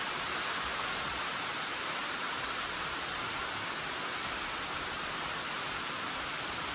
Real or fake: real